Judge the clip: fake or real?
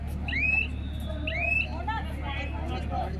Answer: real